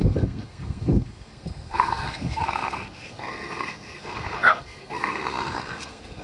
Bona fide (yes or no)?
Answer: no